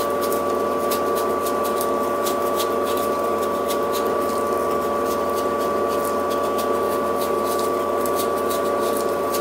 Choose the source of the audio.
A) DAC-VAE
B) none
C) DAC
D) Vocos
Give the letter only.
B